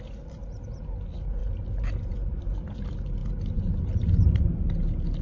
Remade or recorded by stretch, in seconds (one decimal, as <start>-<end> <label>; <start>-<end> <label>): 0.0-5.2 recorded